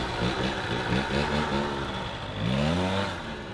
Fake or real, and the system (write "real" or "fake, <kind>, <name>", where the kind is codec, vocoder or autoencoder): real